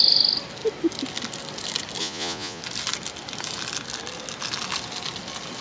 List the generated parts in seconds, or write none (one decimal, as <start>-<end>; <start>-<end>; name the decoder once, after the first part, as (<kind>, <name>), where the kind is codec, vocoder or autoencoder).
2.0-2.6 (vocoder, Vocos)